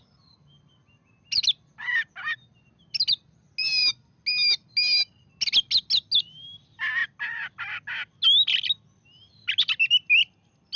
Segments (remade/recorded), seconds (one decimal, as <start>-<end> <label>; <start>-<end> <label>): 0.0-10.8 recorded